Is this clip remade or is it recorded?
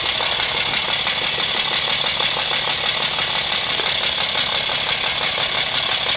recorded